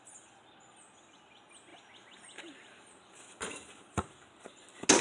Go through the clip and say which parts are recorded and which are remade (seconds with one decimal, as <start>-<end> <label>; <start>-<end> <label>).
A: 0.0-5.0 recorded